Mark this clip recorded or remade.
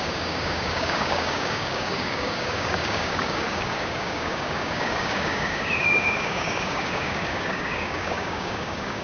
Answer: remade